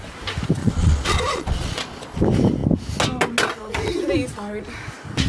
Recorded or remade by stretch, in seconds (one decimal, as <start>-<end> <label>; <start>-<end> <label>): 0.0-0.6 recorded; 0.6-2.2 remade; 2.2-5.3 recorded